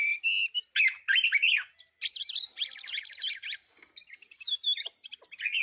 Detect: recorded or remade recorded